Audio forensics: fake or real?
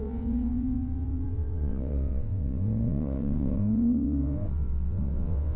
fake